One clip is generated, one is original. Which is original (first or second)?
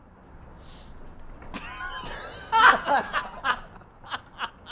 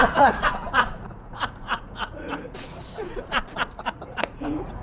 first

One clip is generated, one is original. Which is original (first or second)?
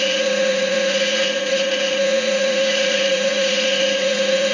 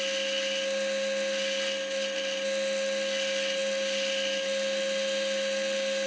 second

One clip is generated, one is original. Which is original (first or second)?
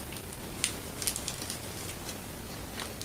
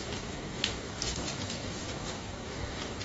first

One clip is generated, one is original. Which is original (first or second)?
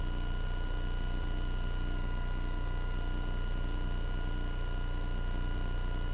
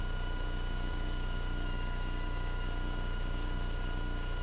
first